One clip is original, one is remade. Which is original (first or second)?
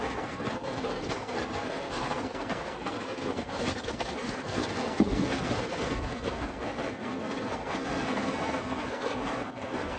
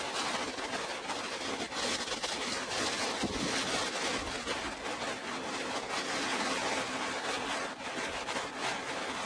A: second